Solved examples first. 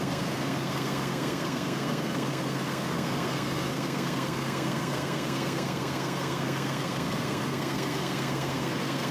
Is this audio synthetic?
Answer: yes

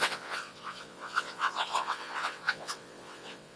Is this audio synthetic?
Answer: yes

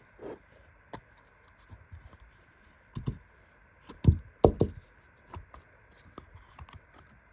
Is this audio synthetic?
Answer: no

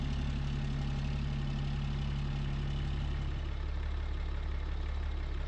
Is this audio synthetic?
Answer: no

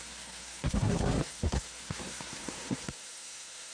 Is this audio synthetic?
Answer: yes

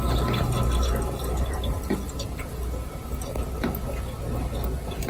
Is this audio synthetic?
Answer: no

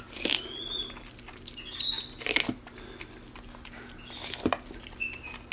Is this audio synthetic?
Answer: no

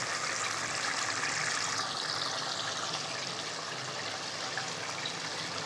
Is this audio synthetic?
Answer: no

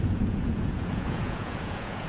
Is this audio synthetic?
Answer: yes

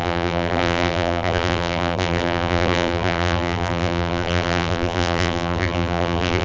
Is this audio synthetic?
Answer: yes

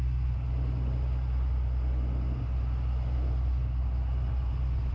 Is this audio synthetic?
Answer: no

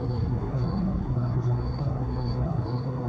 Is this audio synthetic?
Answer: yes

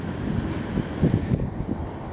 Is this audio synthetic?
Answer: no